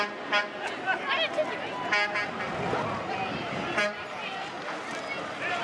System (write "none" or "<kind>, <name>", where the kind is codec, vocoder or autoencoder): none